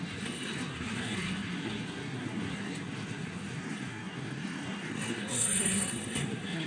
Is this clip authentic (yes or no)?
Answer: no